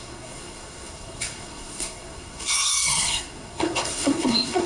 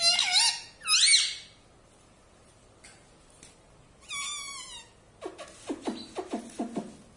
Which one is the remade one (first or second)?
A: first